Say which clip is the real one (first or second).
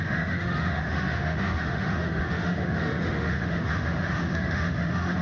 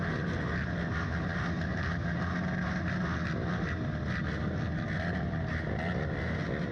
second